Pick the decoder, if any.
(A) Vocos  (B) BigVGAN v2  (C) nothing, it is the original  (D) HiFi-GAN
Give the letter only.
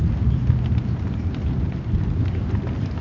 C